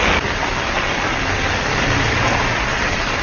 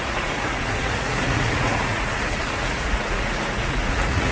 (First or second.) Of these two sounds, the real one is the first